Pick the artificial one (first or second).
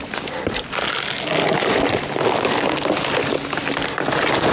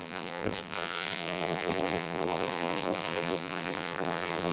second